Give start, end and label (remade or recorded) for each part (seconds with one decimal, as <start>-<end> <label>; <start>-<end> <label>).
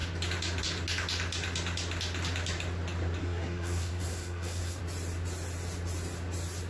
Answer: 0.0-3.2 recorded; 3.2-4.8 remade; 4.8-6.7 recorded